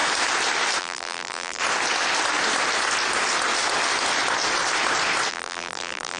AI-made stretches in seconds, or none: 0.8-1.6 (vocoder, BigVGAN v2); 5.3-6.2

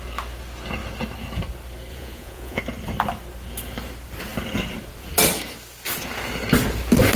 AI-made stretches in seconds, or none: 1.9-2.6 (vocoder, Vocos)

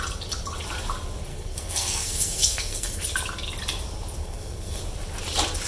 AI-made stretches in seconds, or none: 1.3-3.0 (codec, SNAC); 4.2-4.8

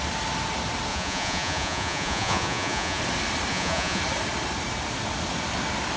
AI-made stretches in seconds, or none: 0.9-3.0 (vocoder, Vocos); 3.5-4.0

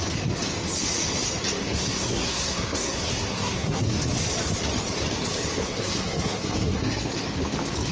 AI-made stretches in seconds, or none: 1.6-4.0 (codec, SNAC); 5.6-7.1